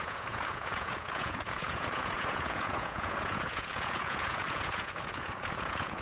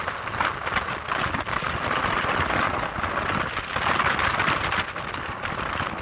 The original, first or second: second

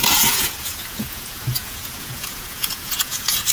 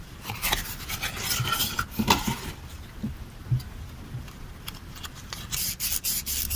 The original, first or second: second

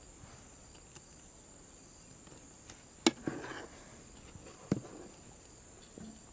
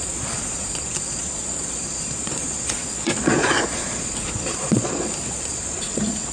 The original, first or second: first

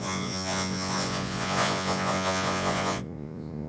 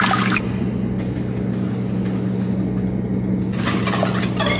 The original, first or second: second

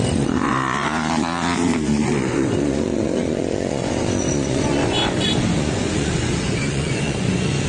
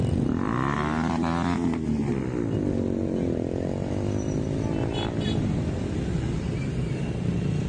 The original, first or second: second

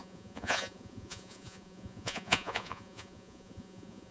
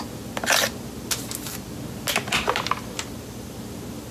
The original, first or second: second